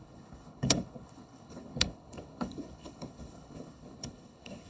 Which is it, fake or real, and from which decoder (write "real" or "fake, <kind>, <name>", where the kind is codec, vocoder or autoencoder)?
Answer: fake, codec, HILCodec